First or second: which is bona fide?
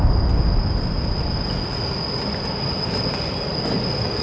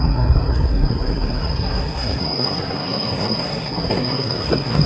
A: first